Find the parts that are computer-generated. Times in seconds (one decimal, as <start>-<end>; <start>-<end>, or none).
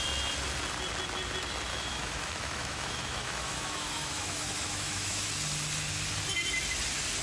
1.7-5.3